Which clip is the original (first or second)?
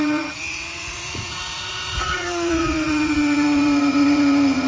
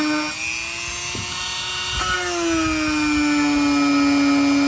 second